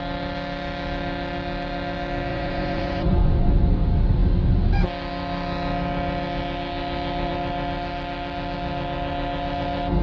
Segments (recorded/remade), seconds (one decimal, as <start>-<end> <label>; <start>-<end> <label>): 0.0-2.3 recorded; 2.3-3.5 remade; 3.5-10.0 recorded

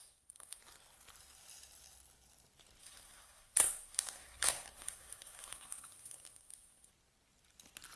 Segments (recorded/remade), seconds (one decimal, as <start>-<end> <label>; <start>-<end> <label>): 0.0-0.6 remade; 0.6-2.8 recorded; 2.8-6.9 remade; 6.9-8.0 recorded

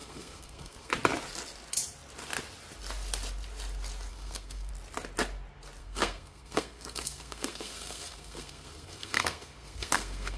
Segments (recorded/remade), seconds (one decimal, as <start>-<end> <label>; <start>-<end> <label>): 0.0-0.9 remade; 0.9-4.1 recorded; 4.1-4.7 remade; 4.7-5.8 recorded; 5.8-10.4 remade

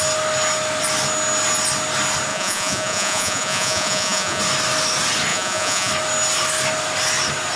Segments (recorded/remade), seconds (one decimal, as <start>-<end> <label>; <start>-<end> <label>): 0.0-2.3 recorded; 2.3-4.4 remade; 4.4-5.3 recorded; 5.3-5.9 remade; 5.9-7.6 recorded

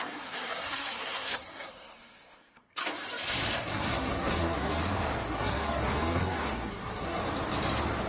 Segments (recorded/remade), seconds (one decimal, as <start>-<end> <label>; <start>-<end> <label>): 0.0-2.8 remade; 2.8-3.6 recorded; 3.6-4.8 remade; 4.8-5.3 recorded; 5.3-7.2 remade; 7.2-8.1 recorded

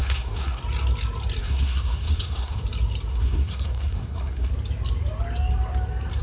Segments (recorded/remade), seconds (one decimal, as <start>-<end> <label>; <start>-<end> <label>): 0.0-0.6 remade; 0.6-1.4 recorded; 1.4-2.6 remade; 2.6-3.1 recorded; 3.1-4.5 remade; 4.5-6.2 recorded

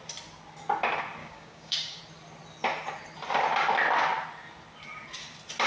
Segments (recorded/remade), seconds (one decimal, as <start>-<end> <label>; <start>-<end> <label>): 0.0-1.2 recorded; 1.2-2.0 remade; 2.0-5.7 recorded

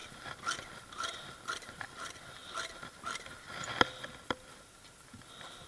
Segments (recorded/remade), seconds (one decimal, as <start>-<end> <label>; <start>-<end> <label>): 0.0-5.7 recorded